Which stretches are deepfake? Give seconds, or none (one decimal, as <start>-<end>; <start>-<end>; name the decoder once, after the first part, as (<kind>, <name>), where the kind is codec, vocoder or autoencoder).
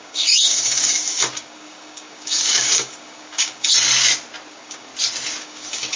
0.0-3.7 (codec, DAC); 4.5-4.9; 5.4-6.0